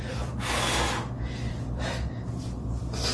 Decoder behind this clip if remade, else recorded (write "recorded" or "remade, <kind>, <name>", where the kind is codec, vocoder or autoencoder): remade, vocoder, BigVGAN v2